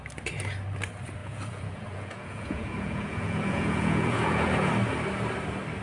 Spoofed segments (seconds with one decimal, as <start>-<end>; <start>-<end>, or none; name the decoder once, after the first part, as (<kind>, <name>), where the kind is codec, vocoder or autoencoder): 1.2-4.7 (vocoder, Vocos)